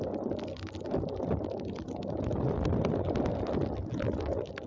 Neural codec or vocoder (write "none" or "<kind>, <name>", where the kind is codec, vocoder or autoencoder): none